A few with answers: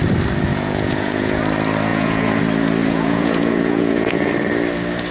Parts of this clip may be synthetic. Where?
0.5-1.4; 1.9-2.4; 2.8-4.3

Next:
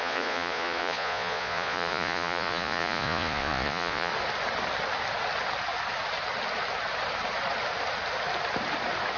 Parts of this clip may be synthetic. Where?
0.0-4.1